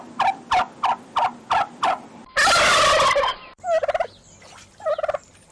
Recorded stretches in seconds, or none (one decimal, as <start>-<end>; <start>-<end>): 0.0-5.5